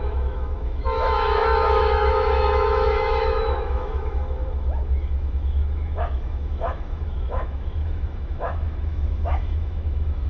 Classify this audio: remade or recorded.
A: remade